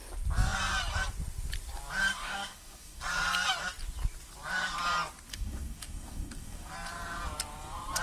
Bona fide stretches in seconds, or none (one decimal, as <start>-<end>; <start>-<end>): 0.0-2.1; 3.0-5.3; 6.7-8.0